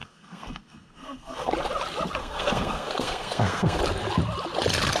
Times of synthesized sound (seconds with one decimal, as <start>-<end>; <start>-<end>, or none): 0.0-1.5; 2.2-3.8